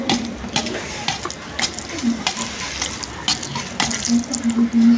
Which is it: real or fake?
real